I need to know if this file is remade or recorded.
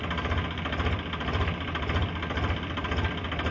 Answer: recorded